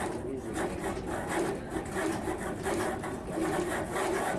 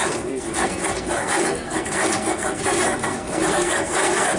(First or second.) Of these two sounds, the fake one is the second